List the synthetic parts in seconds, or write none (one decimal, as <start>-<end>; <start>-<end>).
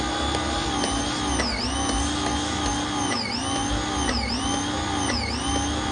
none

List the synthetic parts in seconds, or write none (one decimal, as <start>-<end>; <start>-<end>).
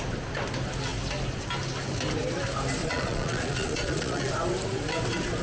2.8-4.3